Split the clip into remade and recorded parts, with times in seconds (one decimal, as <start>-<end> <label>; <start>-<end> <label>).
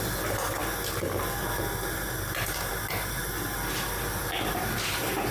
0.0-5.3 recorded